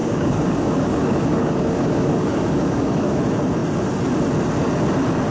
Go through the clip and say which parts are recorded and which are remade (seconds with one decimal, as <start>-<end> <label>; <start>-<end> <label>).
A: 0.0-3.2 remade; 3.2-5.3 recorded